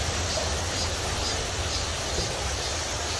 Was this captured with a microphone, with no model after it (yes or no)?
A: yes